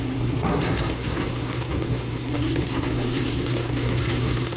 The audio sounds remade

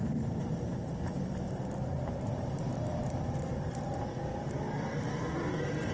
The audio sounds remade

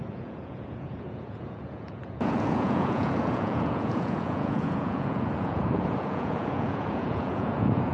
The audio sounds remade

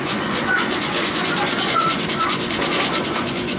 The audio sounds remade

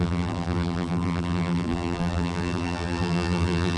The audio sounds remade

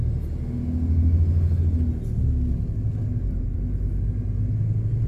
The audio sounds recorded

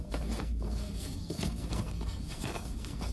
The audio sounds remade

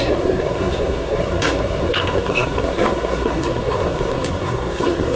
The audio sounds remade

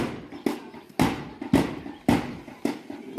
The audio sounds recorded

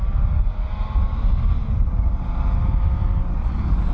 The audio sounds remade